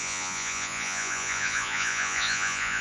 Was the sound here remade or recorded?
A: remade